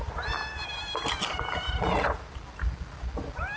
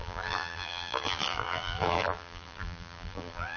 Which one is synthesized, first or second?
second